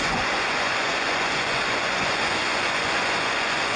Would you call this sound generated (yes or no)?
yes